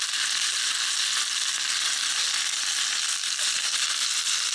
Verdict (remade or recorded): recorded